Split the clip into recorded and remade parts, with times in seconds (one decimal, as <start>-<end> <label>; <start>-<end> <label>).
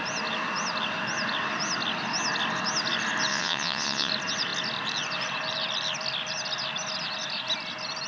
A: 0.0-3.3 recorded; 3.3-4.1 remade; 4.1-8.1 recorded